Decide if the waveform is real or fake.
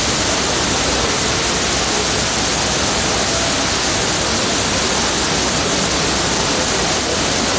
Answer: real